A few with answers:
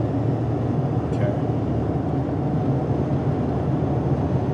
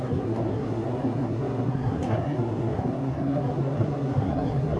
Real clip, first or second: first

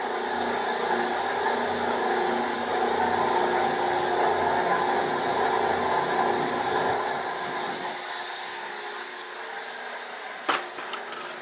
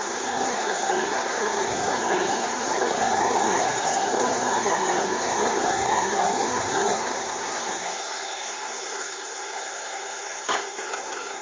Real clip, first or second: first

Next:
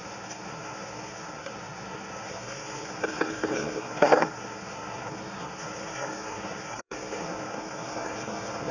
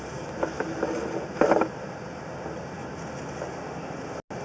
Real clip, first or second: second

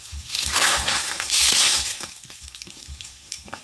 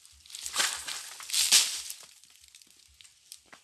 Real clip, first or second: second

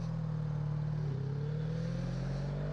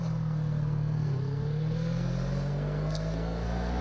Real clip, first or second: first